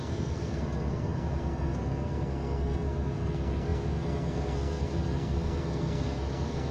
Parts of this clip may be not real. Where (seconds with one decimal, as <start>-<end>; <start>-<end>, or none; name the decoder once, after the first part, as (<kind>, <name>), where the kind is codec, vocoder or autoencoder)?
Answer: 0.0-6.7 (codec, SNAC)